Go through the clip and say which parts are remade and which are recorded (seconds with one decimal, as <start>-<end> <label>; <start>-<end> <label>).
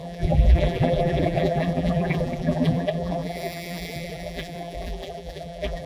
0.0-5.9 remade